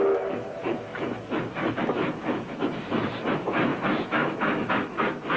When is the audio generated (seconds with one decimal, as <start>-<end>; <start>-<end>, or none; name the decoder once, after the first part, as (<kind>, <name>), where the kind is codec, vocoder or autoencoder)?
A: 0.0-5.4 (autoencoder, DAC-VAE)